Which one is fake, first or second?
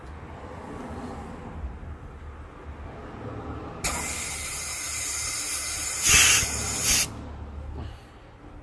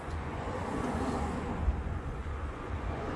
second